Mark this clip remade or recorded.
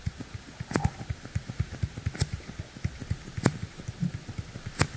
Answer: recorded